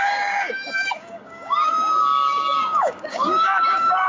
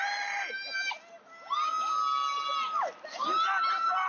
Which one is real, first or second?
second